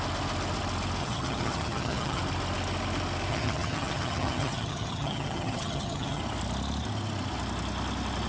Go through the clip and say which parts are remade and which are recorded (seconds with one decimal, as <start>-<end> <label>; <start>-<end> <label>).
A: 0.0-1.0 recorded; 1.0-2.2 remade; 2.2-3.3 recorded; 3.3-6.2 remade; 6.2-8.3 recorded